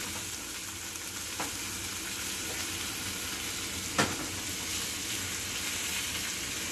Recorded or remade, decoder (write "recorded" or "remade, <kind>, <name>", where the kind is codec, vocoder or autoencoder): recorded